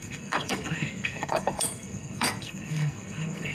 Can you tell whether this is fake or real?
fake